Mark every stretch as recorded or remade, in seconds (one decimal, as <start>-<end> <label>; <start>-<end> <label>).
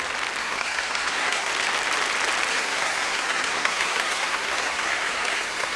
0.0-0.4 recorded; 0.4-1.5 remade; 1.5-2.5 recorded; 2.5-5.8 remade